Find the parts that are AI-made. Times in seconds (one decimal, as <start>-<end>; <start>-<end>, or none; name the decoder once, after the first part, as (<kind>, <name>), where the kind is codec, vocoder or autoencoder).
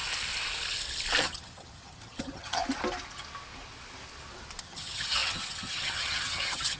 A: 1.2-2.6 (vocoder, HiFi-GAN); 4.6-6.8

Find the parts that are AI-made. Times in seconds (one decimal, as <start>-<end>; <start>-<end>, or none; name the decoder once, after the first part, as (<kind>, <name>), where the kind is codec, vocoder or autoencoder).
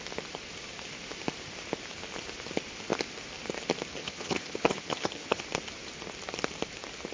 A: 4.0-5.4 (vocoder, HiFi-GAN)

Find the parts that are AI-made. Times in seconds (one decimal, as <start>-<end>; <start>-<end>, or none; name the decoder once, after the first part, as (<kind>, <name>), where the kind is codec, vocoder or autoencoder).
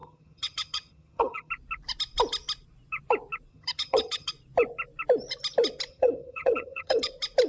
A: 0.0-1.5 (vocoder, HiFi-GAN); 3.5-4.3; 5.9-7.1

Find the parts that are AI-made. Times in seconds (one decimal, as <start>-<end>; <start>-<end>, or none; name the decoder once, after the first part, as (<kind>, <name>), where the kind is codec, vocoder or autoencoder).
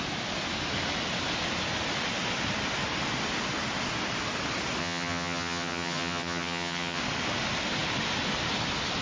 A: 4.8-7.0 (vocoder, HiFi-GAN)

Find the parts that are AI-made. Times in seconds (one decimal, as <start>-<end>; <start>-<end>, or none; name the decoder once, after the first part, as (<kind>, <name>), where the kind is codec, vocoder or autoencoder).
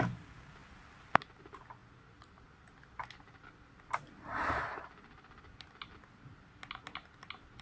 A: none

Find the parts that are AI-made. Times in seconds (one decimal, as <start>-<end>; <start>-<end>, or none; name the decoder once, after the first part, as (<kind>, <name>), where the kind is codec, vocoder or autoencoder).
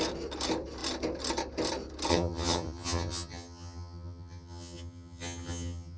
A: 2.1-6.0 (vocoder, HiFi-GAN)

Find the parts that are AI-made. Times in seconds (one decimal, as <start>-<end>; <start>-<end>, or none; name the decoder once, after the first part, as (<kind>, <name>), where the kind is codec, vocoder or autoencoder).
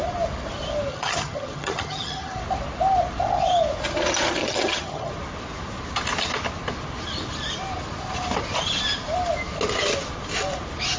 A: 0.9-2.4 (vocoder, HiFi-GAN); 4.4-5.1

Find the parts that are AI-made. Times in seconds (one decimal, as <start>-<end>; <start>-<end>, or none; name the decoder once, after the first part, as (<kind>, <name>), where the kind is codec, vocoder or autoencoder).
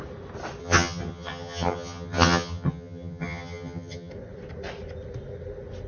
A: 0.6-4.1 (vocoder, HiFi-GAN)